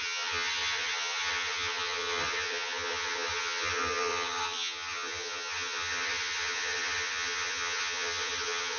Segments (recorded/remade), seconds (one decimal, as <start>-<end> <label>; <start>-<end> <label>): 0.0-8.8 remade